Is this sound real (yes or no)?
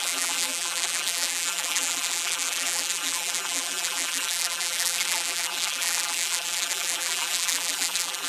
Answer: no